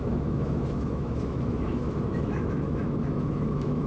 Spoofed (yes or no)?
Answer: yes